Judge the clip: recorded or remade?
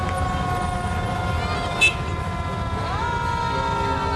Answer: recorded